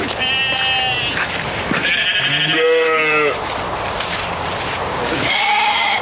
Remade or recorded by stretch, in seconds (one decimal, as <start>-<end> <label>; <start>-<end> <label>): 0.0-4.9 recorded; 4.9-6.0 remade